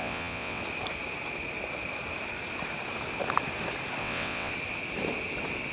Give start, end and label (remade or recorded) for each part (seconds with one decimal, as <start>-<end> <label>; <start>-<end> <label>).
0.0-0.6 remade; 0.6-4.0 recorded; 4.0-4.5 remade; 4.5-5.7 recorded